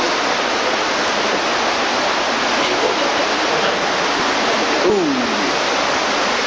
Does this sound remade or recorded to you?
recorded